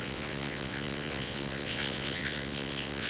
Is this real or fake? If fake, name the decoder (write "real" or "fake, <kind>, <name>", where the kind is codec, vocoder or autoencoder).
fake, vocoder, WaveNeXt